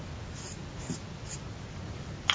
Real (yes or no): yes